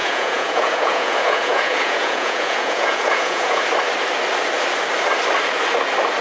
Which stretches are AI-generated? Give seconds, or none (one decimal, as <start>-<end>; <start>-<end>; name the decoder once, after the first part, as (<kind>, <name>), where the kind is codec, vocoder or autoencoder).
0.0-3.7 (vocoder, Vocos)